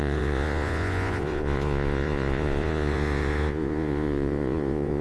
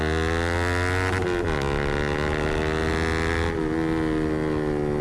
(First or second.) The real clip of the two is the second